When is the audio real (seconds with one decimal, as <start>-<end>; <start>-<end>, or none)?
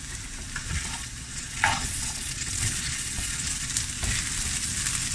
0.0-0.6; 3.7-5.1